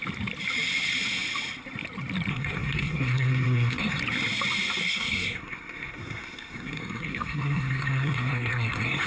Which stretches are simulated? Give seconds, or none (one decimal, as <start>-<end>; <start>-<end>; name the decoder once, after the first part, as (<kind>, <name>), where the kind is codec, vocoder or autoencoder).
2.3-4.0 (codec, SNAC); 4.8-9.1

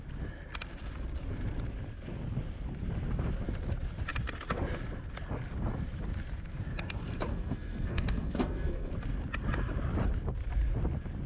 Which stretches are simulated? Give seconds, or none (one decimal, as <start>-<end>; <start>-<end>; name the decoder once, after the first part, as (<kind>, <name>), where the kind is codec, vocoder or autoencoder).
7.3-8.9 (codec, SNAC)

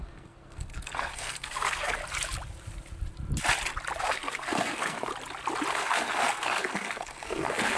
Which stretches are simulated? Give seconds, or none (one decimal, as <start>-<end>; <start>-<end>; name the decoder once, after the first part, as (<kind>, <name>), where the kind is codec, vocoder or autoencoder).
0.0-2.0 (codec, SNAC); 4.0-5.1; 5.7-7.8